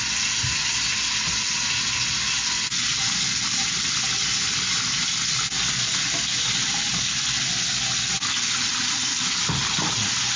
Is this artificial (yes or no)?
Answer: no